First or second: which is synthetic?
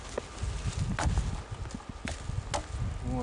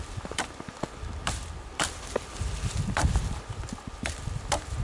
second